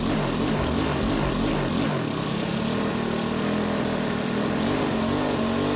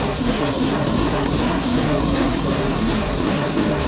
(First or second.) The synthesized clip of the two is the second